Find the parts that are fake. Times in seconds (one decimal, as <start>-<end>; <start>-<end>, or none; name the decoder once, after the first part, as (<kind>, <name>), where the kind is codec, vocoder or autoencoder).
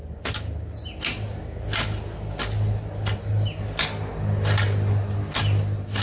none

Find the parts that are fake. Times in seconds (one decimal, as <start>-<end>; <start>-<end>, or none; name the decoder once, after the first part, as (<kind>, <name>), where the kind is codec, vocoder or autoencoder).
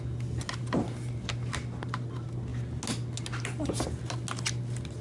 none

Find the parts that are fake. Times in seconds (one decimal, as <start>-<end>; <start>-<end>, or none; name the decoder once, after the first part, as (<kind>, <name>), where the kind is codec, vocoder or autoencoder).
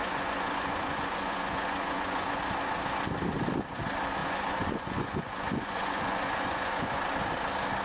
0.0-2.4 (vocoder, Vocos); 4.2-7.0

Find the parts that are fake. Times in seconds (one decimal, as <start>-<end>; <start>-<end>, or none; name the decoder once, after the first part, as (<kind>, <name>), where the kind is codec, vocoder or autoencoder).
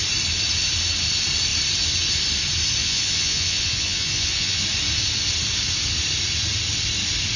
2.8-4.6 (vocoder, Vocos)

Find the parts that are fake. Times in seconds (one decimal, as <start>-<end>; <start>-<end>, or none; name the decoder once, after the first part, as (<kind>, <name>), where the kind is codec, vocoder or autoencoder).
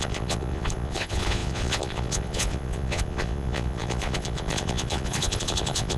0.0-6.0 (vocoder, Vocos)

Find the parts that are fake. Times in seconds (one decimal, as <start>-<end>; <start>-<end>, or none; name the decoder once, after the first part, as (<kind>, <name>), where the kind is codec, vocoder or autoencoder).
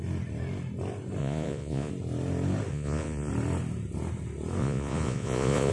1.2-1.9 (vocoder, Vocos); 2.7-3.3; 4.6-5.7